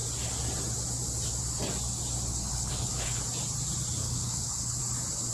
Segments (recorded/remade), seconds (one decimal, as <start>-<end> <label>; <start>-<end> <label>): 0.0-2.3 recorded; 2.3-3.2 remade; 3.2-4.0 recorded; 4.0-4.8 remade; 4.8-5.3 recorded